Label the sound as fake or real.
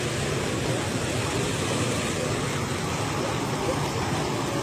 real